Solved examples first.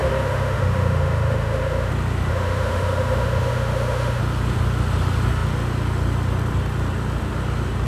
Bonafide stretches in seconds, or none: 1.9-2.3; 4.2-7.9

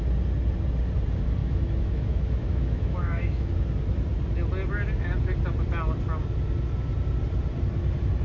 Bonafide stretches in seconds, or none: 0.0-1.4; 3.5-8.2

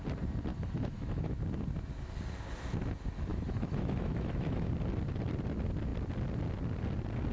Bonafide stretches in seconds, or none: 0.0-0.5; 1.4-3.3; 4.7-7.3

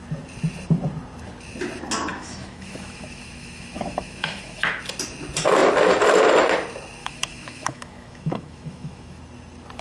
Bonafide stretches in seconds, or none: 0.0-2.1; 4.8-7.0; 9.2-9.8

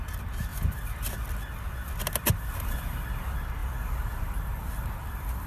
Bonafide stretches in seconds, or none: 0.0-5.5

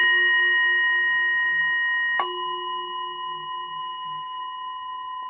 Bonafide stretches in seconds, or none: 1.6-3.8; 4.4-5.3